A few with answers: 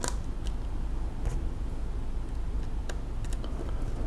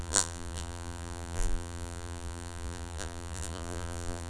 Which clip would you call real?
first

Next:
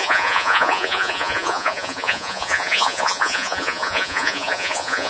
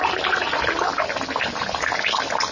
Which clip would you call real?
second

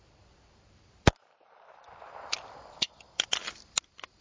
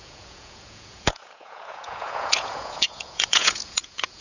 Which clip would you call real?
first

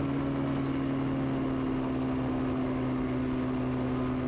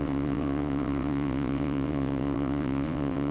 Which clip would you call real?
first